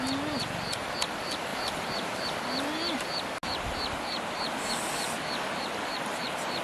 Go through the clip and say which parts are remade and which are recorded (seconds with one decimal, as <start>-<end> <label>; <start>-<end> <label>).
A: 0.0-6.6 recorded